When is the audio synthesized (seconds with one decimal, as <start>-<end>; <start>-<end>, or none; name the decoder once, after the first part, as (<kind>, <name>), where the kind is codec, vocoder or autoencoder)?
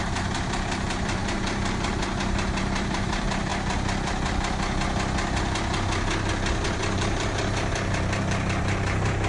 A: 0.0-3.5 (vocoder, BigVGAN v2); 6.3-9.3